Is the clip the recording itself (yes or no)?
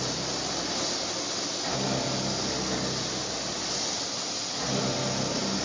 yes